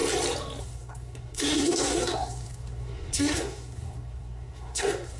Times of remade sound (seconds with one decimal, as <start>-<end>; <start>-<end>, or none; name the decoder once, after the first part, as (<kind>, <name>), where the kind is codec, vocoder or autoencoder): 0.6-5.2 (codec, SNAC)